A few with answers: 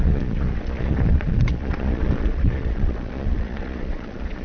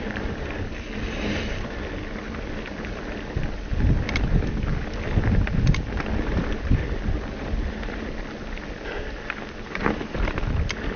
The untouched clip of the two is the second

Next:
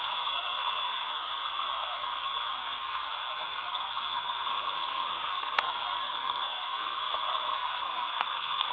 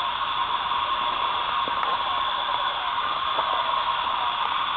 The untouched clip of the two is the second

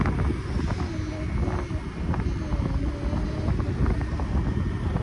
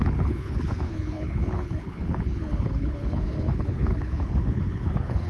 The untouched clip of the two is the first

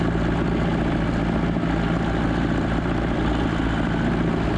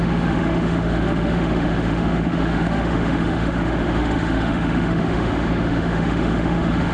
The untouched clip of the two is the first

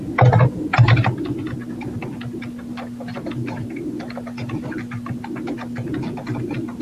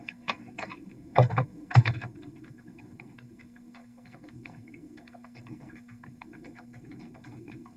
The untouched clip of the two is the first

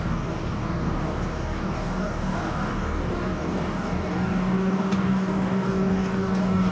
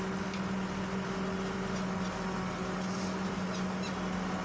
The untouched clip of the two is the second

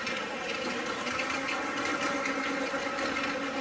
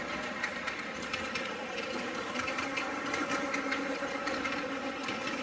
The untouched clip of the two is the first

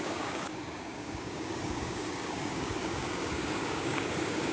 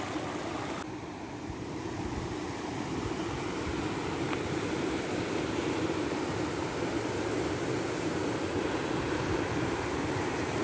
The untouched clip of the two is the second